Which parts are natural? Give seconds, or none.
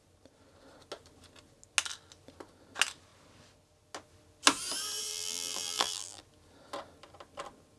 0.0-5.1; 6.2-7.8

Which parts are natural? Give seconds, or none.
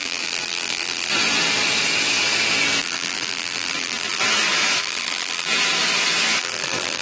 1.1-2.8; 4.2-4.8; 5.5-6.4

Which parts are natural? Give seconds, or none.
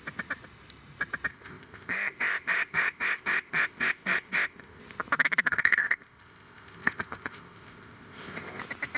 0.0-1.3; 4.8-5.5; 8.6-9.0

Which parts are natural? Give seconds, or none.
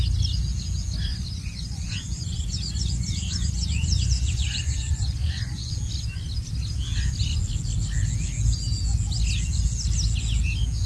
0.0-1.1; 5.7-10.9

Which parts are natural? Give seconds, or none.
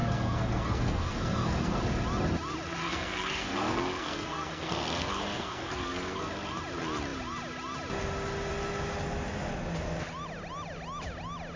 1.8-2.8; 6.3-11.6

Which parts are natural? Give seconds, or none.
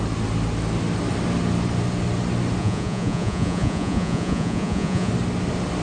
0.0-2.6; 5.1-5.8